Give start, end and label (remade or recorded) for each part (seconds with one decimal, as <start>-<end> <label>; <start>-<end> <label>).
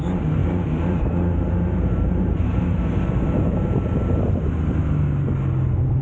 0.0-0.4 recorded; 0.4-2.8 remade; 2.8-6.0 recorded